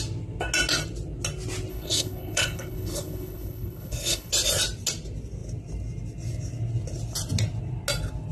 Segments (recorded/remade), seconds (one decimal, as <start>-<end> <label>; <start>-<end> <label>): 0.0-1.7 recorded; 1.7-4.3 remade; 4.3-8.3 recorded